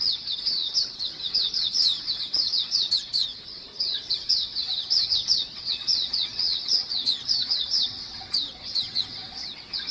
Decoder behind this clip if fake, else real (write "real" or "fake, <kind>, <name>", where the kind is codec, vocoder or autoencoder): fake, vocoder, WaveNeXt